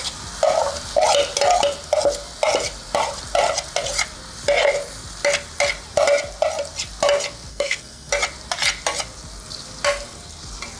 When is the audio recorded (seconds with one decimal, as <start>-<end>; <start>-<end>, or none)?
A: 0.0-7.5; 8.1-10.8